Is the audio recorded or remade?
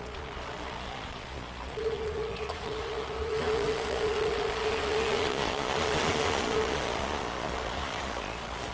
remade